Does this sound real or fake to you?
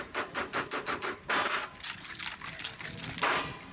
fake